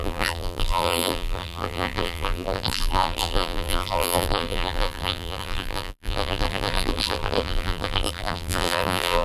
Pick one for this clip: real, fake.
fake